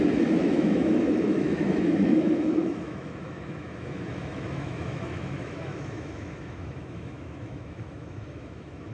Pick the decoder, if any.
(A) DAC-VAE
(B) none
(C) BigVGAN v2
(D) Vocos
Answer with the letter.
A